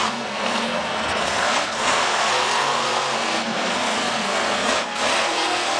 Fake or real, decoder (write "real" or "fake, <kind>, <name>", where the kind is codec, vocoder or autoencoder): fake, codec, SNAC